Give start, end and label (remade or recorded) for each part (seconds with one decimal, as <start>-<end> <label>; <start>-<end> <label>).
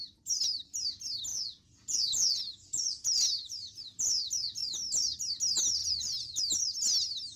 0.0-1.3 recorded; 1.3-4.0 remade; 4.0-5.8 recorded; 5.8-6.4 remade; 6.4-7.4 recorded